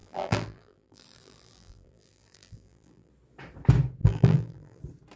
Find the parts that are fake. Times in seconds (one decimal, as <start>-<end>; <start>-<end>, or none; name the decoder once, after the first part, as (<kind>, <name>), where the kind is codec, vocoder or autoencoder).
0.0-3.1 (vocoder, BigVGAN v2); 4.0-4.8